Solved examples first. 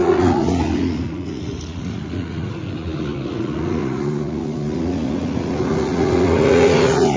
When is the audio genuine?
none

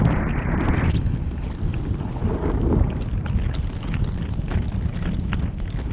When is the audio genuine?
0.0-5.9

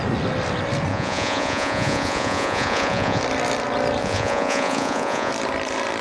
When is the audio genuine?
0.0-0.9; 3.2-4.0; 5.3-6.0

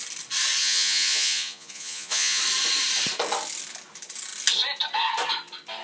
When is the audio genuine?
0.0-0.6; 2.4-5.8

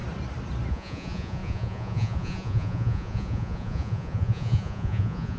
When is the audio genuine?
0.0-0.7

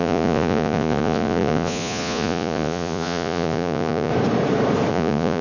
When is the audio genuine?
4.1-4.9

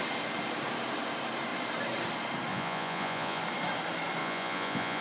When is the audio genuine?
0.0-2.5; 3.4-4.2

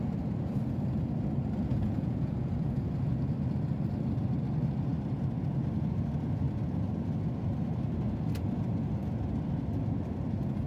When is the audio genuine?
0.0-1.7; 2.8-10.7